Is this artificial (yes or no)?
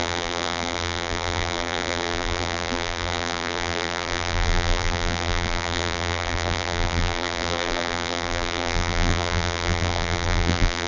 yes